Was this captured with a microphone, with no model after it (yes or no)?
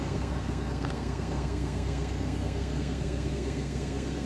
no